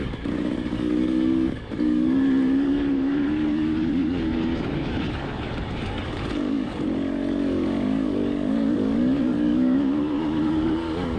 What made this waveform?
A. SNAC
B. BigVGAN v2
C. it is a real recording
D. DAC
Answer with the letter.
D